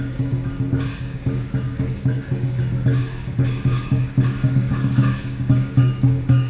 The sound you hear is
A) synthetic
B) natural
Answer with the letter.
A